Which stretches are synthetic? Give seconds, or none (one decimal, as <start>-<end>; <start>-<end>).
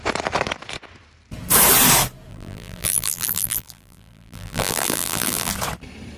2.3-5.5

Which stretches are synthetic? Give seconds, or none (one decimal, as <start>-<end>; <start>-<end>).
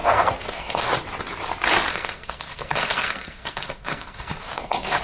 0.0-0.9; 1.9-5.0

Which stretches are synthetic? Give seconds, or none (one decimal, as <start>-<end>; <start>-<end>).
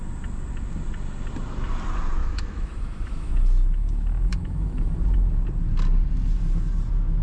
2.2-3.3; 4.3-4.9